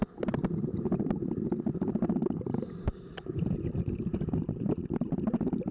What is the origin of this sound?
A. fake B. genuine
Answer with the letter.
B